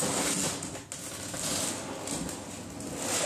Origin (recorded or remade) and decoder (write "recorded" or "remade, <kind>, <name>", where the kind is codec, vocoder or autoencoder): recorded